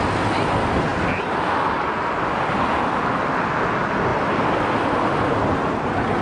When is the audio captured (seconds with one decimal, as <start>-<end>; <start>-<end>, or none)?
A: 0.0-4.1; 5.4-6.2

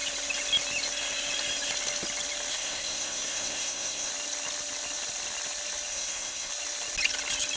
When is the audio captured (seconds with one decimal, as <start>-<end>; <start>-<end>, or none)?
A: 0.0-2.5; 4.1-5.9; 6.5-7.6

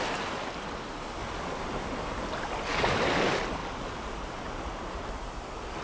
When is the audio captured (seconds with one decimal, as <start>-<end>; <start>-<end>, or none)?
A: 0.0-5.8